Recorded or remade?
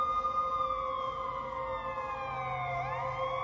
recorded